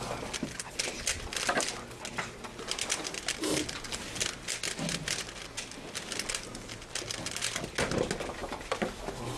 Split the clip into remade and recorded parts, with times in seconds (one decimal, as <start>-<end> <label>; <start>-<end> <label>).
0.0-8.4 recorded; 8.4-9.0 remade; 9.0-9.4 recorded